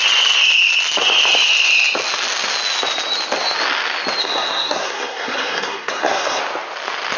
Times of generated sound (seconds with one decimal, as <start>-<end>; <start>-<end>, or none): 4.2-6.4